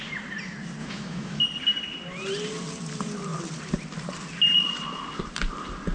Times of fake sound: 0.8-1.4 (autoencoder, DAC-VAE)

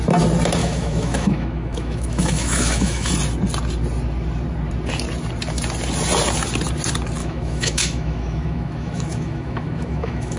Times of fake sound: 0.6-3.1 (autoencoder, DAC-VAE); 7.2-10.4

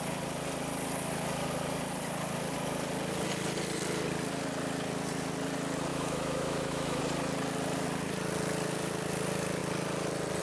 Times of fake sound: 5.9-7.0 (autoencoder, DAC-VAE)

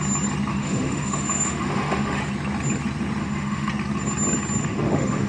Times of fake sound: 0.5-2.2 (autoencoder, DAC-VAE); 3.2-3.7; 4.6-5.3

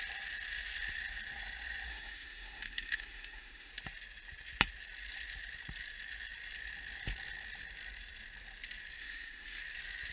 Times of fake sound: 1.9-3.7 (autoencoder, DAC-VAE); 9.0-9.6